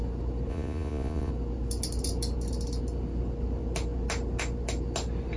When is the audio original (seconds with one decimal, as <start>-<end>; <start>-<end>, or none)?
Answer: 0.0-0.5; 1.3-5.4